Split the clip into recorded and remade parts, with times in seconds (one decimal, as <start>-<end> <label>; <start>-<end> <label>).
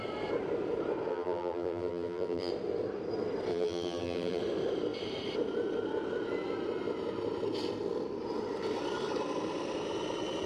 0.0-1.1 recorded; 1.1-2.5 remade; 2.5-3.5 recorded; 3.5-4.4 remade; 4.4-10.5 recorded